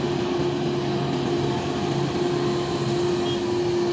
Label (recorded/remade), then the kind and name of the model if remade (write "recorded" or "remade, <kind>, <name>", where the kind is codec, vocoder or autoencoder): recorded